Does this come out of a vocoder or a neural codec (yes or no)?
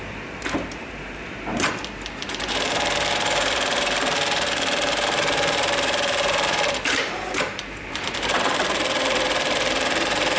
yes